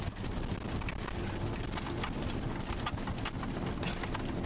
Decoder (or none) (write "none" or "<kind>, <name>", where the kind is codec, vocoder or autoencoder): none